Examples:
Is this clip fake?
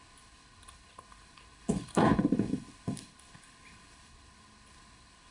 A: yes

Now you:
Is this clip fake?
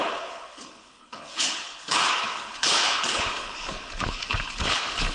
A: yes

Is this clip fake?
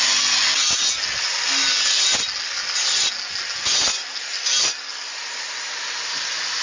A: no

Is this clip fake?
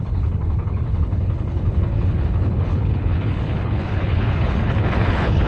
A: yes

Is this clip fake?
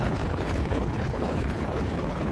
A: yes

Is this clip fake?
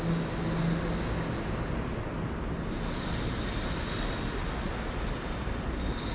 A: no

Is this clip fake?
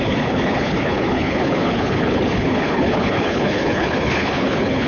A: yes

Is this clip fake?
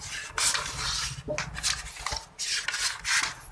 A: no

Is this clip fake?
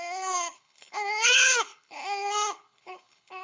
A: yes